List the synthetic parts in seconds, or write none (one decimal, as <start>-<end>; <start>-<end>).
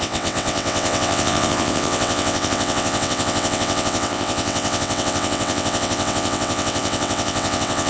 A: 0.0-7.9